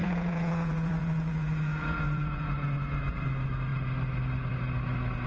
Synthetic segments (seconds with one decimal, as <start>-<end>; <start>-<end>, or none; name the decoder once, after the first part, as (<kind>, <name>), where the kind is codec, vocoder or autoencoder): 0.0-3.2 (vocoder, Vocos)